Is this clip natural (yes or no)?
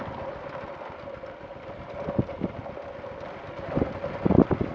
yes